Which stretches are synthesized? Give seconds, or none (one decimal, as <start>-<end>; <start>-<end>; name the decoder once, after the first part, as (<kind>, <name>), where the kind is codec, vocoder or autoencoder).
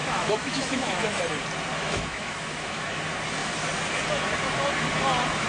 0.0-1.2 (autoencoder, DAC-VAE); 1.8-3.0